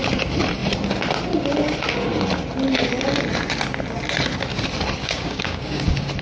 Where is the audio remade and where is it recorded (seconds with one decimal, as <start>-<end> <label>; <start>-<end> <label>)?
0.0-5.0 recorded; 5.0-5.8 remade; 5.8-6.2 recorded